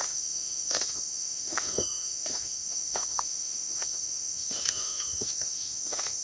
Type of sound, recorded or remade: remade